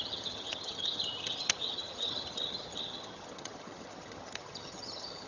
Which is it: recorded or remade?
remade